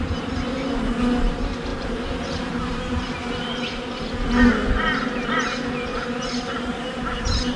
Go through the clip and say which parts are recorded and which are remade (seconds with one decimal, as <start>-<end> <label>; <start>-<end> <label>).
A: 0.0-1.7 recorded; 1.7-3.0 remade; 3.0-5.9 recorded; 5.9-7.6 remade

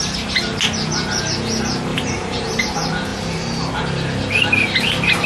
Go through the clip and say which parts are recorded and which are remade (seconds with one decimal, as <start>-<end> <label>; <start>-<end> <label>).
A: 0.0-1.9 recorded; 1.9-2.6 remade; 2.6-5.3 recorded